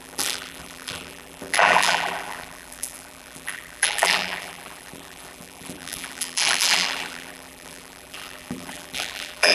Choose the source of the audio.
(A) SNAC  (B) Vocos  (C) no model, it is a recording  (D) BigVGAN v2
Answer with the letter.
D